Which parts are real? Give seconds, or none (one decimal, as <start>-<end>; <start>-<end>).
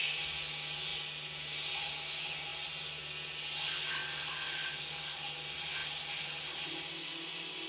0.0-7.7